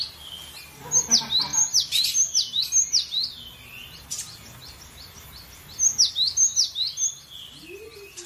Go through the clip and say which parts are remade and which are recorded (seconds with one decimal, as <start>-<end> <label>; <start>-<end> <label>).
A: 0.0-8.3 recorded